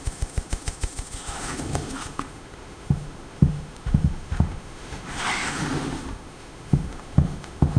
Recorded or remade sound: remade